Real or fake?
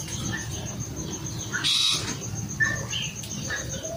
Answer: real